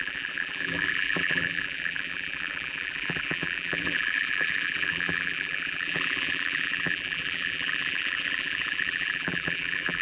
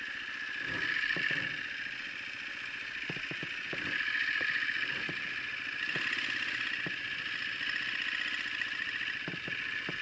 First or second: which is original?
second